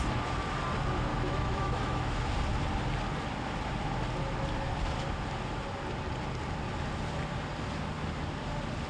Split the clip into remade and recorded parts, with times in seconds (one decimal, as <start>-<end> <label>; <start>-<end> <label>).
0.0-1.1 recorded; 1.1-2.3 remade; 2.3-8.9 recorded